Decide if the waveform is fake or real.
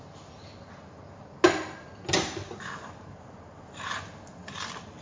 real